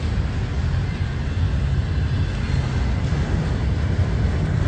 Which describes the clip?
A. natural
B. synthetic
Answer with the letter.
A